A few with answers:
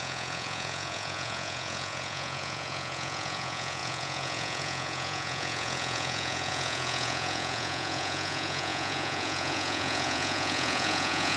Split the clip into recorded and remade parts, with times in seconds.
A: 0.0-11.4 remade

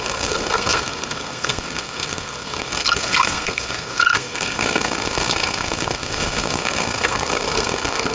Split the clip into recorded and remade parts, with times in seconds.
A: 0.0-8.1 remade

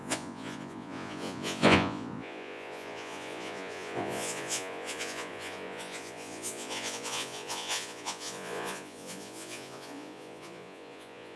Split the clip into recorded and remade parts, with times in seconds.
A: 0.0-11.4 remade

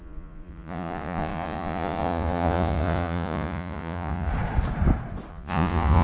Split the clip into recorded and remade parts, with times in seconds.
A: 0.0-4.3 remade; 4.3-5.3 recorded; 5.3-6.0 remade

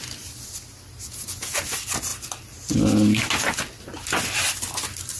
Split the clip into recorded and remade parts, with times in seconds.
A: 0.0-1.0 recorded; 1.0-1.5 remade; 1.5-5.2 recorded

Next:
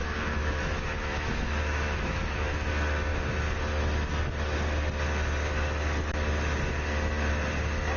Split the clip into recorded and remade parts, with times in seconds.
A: 0.0-2.7 remade; 2.7-8.0 recorded

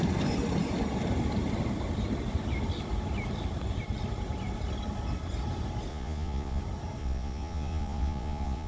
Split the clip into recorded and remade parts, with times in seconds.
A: 0.0-5.9 recorded; 5.9-6.6 remade; 6.6-7.0 recorded; 7.0-8.7 remade

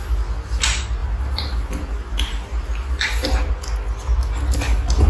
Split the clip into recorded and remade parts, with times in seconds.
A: 0.0-1.0 recorded; 1.0-3.5 remade; 3.5-5.1 recorded